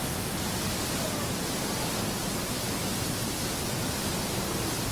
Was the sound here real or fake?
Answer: real